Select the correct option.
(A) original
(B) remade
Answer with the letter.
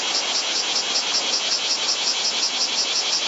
A